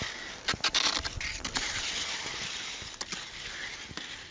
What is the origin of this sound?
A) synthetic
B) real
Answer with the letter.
B